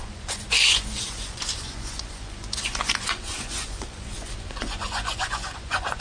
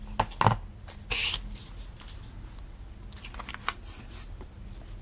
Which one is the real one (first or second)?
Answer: second